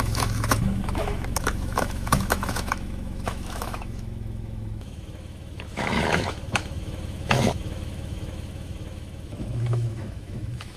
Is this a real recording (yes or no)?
no